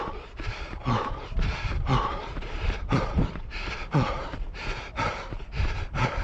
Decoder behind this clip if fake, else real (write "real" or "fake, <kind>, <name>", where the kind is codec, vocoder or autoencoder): fake, vocoder, BigVGAN v2